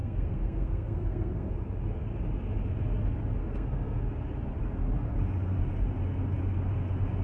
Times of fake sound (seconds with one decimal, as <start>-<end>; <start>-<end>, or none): 0.0-1.5; 3.4-4.0